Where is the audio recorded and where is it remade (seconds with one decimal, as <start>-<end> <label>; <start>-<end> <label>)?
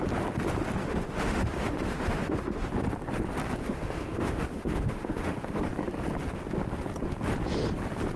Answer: 0.0-0.8 recorded; 0.8-2.7 remade; 2.7-3.6 recorded; 3.6-5.6 remade; 5.6-8.2 recorded